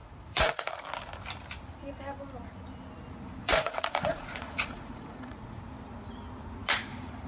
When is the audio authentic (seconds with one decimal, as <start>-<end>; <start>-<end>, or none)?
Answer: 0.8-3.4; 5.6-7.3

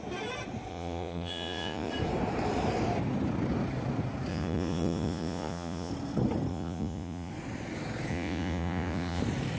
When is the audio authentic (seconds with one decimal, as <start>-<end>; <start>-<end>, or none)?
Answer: 0.0-0.7; 1.9-4.3; 5.9-6.5; 7.3-8.1; 9.2-9.6

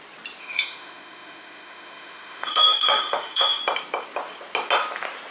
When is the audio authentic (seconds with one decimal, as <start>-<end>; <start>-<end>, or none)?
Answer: 0.0-0.4; 3.6-5.3